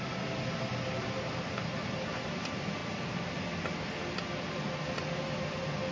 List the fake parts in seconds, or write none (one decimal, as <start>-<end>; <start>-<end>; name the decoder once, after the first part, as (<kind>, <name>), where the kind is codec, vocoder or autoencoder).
none